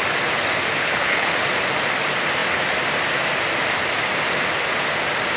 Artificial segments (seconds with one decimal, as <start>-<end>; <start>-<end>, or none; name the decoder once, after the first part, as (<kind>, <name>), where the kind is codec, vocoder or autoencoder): 0.8-1.3 (codec, HILCodec)